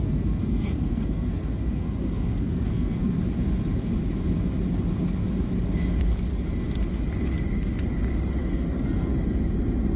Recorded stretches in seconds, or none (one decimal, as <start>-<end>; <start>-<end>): 3.2-8.4; 9.1-10.0